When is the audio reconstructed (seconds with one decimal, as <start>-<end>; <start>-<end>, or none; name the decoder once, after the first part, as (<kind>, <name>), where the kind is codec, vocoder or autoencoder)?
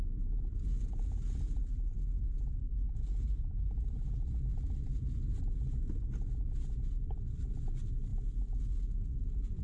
2.6-4.2 (codec, HILCodec)